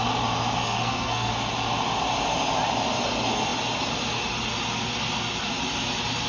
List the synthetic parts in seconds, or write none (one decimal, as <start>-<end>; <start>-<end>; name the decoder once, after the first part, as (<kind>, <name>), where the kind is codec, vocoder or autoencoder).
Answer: 0.6-1.3 (codec, SNAC)